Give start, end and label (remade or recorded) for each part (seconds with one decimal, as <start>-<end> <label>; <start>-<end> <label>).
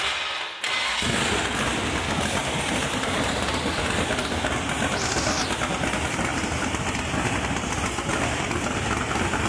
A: 0.0-2.4 recorded; 2.4-3.8 remade; 3.8-6.3 recorded; 6.3-7.8 remade; 7.8-9.5 recorded